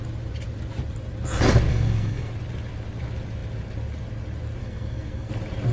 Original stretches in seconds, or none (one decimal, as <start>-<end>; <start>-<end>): 0.0-1.7; 2.3-4.6; 5.3-5.7